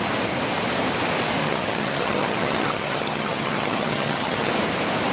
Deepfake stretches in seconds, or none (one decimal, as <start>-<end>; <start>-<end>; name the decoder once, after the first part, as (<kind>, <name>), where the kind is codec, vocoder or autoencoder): 1.4-4.5 (vocoder, HiFi-GAN)

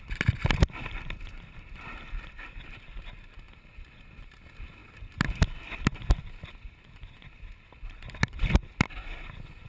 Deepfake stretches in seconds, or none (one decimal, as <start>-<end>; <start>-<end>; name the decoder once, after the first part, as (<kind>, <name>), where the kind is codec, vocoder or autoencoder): none

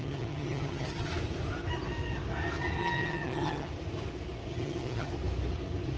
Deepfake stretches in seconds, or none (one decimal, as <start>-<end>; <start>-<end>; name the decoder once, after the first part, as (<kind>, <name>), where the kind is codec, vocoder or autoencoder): 0.0-1.1 (vocoder, HiFi-GAN); 2.8-3.7; 4.5-5.1

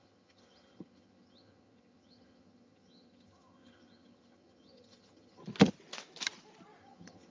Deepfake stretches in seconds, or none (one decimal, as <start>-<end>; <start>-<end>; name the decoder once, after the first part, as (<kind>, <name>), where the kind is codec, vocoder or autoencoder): 0.0-5.4 (vocoder, HiFi-GAN); 6.8-7.3

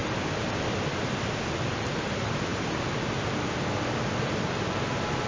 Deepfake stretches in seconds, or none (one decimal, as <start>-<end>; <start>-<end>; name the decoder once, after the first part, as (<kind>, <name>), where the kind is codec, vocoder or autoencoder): none

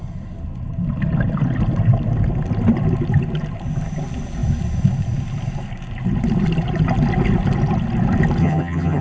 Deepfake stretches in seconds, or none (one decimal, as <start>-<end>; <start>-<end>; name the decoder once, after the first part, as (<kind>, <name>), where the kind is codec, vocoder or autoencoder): 8.4-9.0 (vocoder, HiFi-GAN)